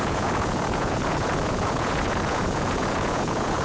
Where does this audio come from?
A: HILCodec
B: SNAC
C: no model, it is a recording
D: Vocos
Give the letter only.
D